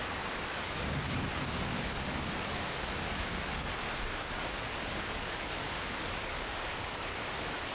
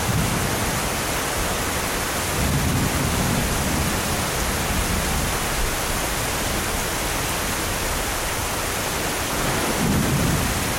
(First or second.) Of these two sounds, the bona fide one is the second